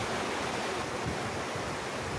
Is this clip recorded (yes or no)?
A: yes